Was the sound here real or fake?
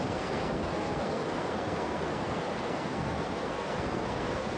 fake